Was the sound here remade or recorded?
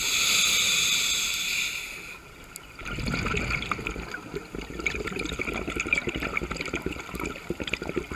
recorded